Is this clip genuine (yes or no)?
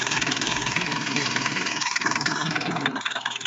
no